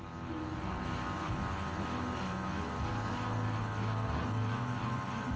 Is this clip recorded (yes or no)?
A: yes